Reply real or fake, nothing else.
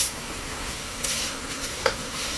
fake